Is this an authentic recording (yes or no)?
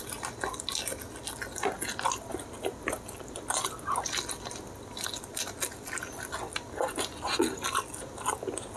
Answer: yes